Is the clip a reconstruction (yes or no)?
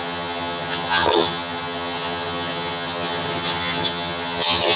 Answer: yes